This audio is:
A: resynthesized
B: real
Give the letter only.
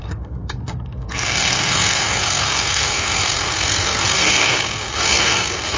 A